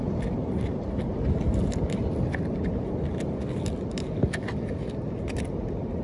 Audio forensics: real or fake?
real